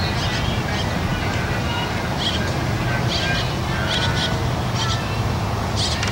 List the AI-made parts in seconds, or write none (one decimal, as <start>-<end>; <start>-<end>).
none